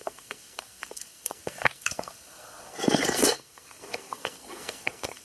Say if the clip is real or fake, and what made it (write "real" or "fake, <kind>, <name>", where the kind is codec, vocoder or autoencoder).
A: fake, codec, SNAC